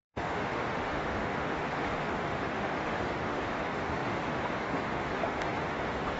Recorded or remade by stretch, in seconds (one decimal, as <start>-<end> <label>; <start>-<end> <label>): 0.0-6.2 remade

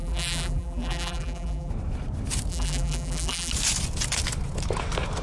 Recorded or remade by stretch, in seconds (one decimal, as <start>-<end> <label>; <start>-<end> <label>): 0.0-1.7 remade; 1.7-2.5 recorded; 2.5-3.5 remade; 3.5-5.2 recorded

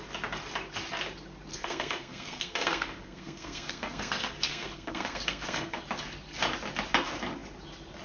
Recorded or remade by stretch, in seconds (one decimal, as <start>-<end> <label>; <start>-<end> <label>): 0.0-1.5 recorded; 1.5-5.8 remade; 5.8-8.0 recorded

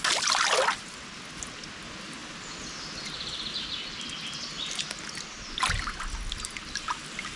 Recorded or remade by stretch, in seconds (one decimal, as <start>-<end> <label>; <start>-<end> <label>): 0.0-7.4 recorded

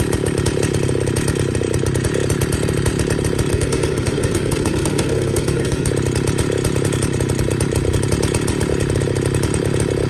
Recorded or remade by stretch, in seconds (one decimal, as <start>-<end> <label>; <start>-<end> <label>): 0.0-3.5 recorded; 3.5-5.9 remade; 5.9-10.1 recorded

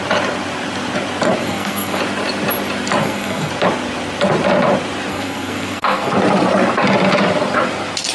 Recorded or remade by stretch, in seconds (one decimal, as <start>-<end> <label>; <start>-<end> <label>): 0.0-1.4 recorded; 1.4-2.0 remade; 2.0-3.0 recorded; 3.0-3.5 remade; 3.5-5.1 recorded; 5.1-6.1 remade; 6.1-8.1 recorded

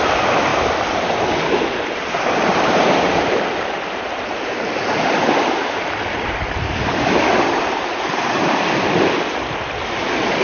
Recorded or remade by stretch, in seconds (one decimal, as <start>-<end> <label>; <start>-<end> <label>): 0.0-0.5 remade; 0.5-1.3 recorded; 1.3-10.4 remade

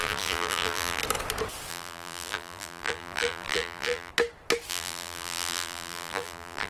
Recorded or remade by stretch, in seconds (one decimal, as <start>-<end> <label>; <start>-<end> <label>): 0.0-1.0 remade; 1.0-1.7 recorded; 1.7-4.1 remade; 4.1-4.7 recorded; 4.7-6.7 remade